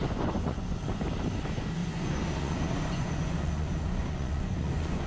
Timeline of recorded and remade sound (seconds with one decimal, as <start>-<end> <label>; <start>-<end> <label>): 0.0-1.0 remade; 1.0-1.8 recorded; 1.8-5.1 remade

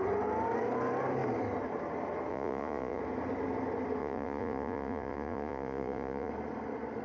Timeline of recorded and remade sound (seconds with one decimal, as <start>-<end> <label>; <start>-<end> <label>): 0.0-2.3 recorded; 2.3-3.0 remade; 3.0-4.0 recorded; 4.0-6.3 remade; 6.3-7.0 recorded

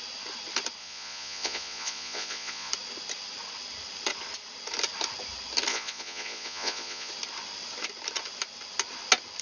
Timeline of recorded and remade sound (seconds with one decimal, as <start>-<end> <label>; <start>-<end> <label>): 0.0-0.8 recorded; 0.8-2.7 remade; 2.7-5.7 recorded; 5.7-7.1 remade; 7.1-9.4 recorded

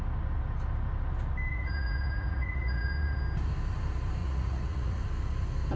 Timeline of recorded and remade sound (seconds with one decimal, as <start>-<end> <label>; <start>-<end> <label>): 0.0-1.5 recorded; 1.5-3.2 remade; 3.2-4.2 recorded; 4.2-5.0 remade; 5.0-5.8 recorded